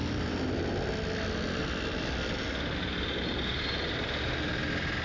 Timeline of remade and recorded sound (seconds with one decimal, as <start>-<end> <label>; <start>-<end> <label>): 0.0-5.0 recorded